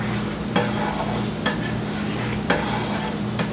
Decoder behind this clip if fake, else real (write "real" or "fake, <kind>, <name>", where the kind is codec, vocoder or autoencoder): real